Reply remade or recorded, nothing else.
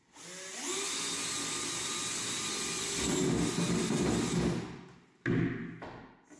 recorded